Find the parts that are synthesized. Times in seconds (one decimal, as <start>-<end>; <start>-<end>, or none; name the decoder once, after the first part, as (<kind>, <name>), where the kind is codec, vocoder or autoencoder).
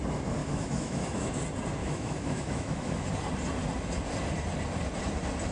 0.4-1.3 (autoencoder, DAC-VAE); 1.8-3.1